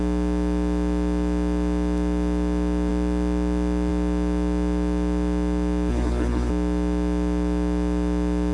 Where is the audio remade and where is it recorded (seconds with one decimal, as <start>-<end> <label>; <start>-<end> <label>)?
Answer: 0.0-5.9 recorded; 5.9-6.5 remade; 6.5-8.5 recorded